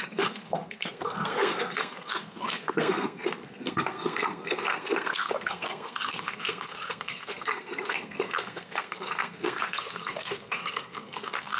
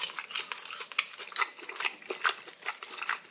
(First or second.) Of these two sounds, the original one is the second